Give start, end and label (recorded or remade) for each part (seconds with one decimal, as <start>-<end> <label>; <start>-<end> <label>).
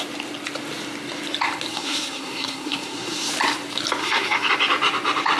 0.0-1.7 recorded; 1.7-3.3 remade; 3.3-4.0 recorded; 4.0-4.5 remade; 4.5-5.4 recorded